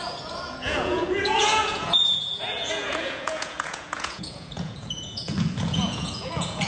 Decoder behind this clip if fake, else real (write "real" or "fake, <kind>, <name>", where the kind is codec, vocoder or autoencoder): fake, vocoder, Vocos